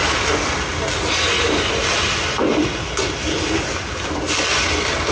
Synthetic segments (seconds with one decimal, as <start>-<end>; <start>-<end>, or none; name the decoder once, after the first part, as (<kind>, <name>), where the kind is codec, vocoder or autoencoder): none